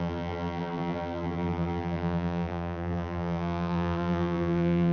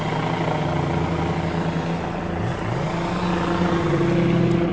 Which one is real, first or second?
second